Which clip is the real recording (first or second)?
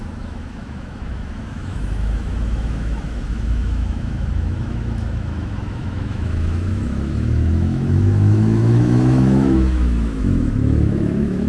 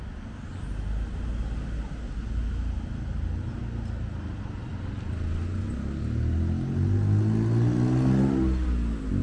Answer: second